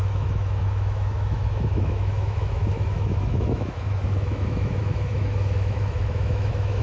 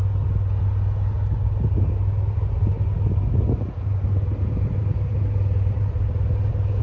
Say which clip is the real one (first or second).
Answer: second